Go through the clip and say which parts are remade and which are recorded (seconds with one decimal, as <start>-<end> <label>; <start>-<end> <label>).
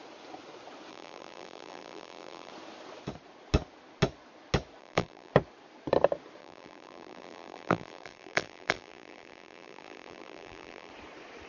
0.0-0.9 recorded; 0.9-2.5 remade; 2.5-4.8 recorded; 4.8-5.3 remade; 5.3-6.4 recorded; 6.4-10.9 remade; 10.9-11.5 recorded